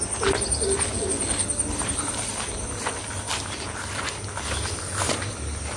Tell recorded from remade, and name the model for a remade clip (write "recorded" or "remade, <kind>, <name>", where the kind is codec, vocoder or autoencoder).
recorded